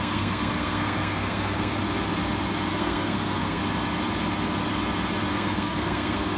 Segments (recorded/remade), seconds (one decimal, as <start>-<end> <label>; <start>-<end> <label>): 0.0-1.7 remade; 1.7-2.7 recorded; 2.7-3.6 remade; 3.6-5.3 recorded; 5.3-6.4 remade